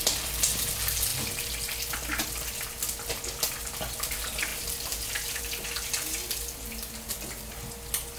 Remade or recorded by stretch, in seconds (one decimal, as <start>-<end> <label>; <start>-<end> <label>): 0.0-8.2 recorded

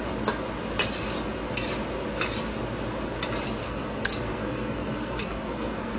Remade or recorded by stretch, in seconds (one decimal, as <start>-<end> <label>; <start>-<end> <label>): 0.0-3.6 recorded; 3.6-6.0 remade

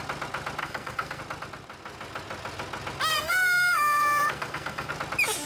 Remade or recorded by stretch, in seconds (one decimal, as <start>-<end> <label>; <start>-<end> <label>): 0.0-0.6 recorded; 0.6-1.2 remade; 1.2-3.1 recorded; 3.1-4.9 remade; 4.9-5.5 recorded

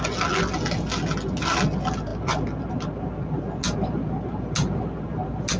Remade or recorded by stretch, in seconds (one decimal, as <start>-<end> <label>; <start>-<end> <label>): 0.0-5.6 recorded

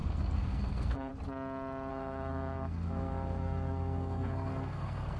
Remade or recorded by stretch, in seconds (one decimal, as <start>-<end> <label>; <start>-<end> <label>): 0.0-1.1 remade; 1.1-1.9 recorded; 1.9-5.2 remade